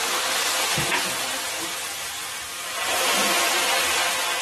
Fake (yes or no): no